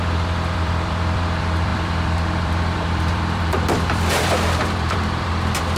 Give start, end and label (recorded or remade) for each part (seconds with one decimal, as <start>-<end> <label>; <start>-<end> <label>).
0.0-5.8 remade